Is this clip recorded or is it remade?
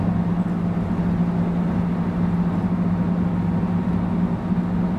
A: recorded